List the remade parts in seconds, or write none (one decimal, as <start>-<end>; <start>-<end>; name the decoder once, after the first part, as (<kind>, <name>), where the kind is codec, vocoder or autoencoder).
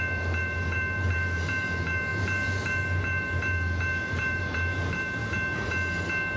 0.0-5.2 (vocoder, BigVGAN v2)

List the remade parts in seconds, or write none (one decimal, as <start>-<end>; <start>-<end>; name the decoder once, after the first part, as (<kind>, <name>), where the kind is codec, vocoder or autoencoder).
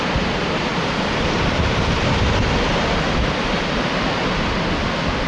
0.0-4.2 (vocoder, BigVGAN v2); 4.8-5.3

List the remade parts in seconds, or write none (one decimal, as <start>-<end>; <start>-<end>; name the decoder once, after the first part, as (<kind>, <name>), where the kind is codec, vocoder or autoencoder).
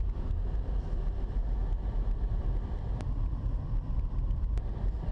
1.6-5.1 (vocoder, BigVGAN v2)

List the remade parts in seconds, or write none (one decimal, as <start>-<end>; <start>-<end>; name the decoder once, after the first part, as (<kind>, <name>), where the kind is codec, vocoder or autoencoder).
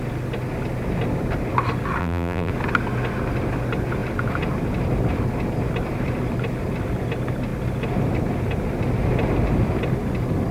2.0-2.5 (vocoder, BigVGAN v2)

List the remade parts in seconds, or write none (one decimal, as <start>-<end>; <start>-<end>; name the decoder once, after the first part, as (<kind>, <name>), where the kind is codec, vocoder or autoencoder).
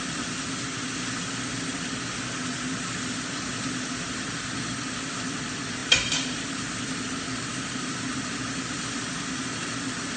5.8-9.1 (vocoder, BigVGAN v2)